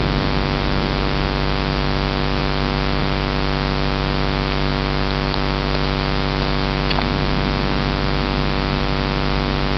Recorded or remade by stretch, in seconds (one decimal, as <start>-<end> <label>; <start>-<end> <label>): 0.0-9.8 recorded